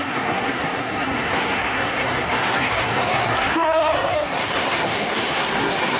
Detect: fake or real fake